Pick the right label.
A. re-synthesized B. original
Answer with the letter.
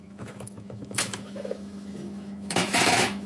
A